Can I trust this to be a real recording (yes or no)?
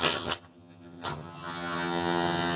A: no